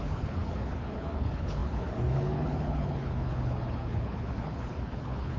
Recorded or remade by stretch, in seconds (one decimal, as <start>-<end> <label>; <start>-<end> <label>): 0.0-5.4 remade